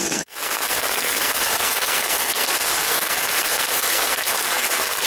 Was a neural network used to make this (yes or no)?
yes